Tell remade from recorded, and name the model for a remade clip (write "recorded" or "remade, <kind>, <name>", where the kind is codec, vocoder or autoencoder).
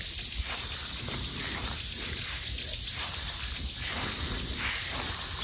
recorded